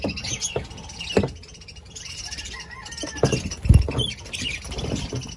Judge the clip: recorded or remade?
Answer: recorded